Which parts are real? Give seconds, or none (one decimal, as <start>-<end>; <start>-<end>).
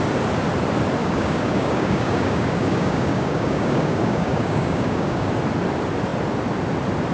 0.0-1.0; 5.3-7.1